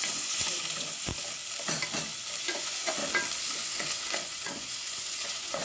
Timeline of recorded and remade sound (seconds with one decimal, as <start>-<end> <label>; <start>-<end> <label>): 0.0-1.1 remade; 1.1-2.4 recorded; 2.4-3.0 remade; 3.0-3.6 recorded; 3.6-5.6 remade